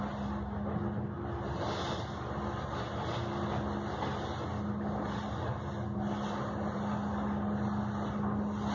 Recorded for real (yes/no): yes